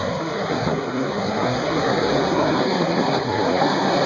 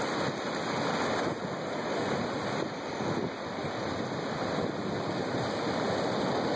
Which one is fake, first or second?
first